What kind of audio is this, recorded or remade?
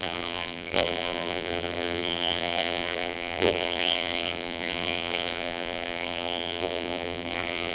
remade